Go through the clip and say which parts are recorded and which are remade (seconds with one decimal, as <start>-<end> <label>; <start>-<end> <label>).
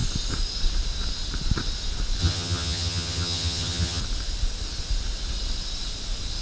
0.0-2.2 recorded; 2.2-4.0 remade; 4.0-6.4 recorded